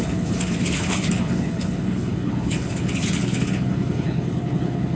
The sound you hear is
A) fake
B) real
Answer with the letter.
A